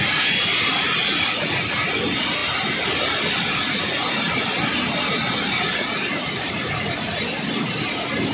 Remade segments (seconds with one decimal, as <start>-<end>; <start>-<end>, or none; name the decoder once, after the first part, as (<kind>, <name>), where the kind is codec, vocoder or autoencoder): none